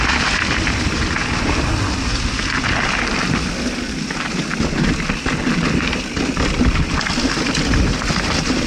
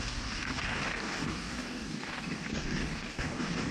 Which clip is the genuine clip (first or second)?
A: first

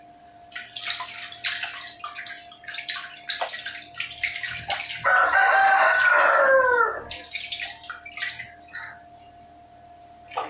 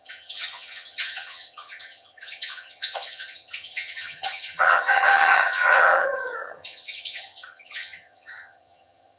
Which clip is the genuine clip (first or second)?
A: first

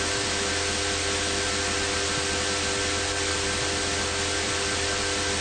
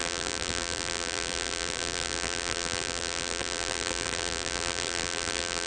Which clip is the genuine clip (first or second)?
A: first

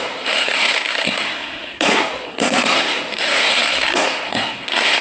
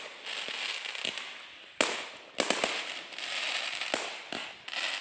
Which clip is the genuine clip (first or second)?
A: second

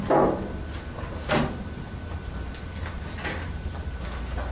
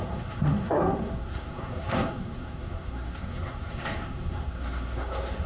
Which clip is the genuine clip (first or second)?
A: first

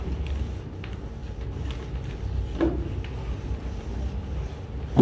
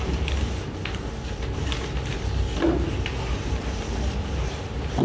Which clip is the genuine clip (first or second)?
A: first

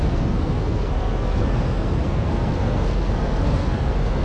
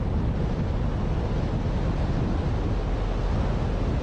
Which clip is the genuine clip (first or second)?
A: second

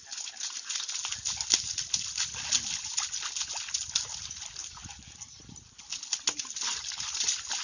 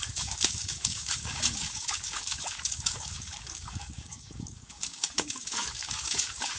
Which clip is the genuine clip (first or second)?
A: first